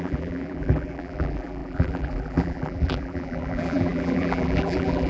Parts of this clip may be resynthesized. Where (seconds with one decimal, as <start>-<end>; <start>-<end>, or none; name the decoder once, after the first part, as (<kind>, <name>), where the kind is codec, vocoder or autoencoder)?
0.0-5.1 (vocoder, BigVGAN v2)